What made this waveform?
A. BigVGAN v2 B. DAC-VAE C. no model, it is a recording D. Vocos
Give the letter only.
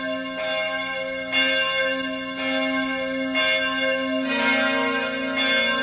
C